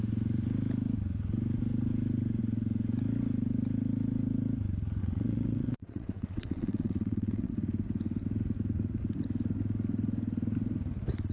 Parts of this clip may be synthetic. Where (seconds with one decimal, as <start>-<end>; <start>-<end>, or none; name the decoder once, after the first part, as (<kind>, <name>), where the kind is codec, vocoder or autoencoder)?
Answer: 5.0-7.5 (vocoder, WaveNeXt)